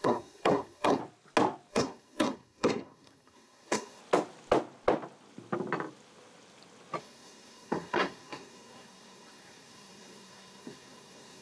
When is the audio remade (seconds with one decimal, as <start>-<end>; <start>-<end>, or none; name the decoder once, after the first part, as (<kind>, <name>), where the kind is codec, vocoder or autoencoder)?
0.0-1.0 (codec, SNAC); 1.7-4.0; 7.0-11.4